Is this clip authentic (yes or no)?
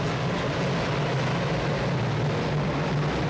yes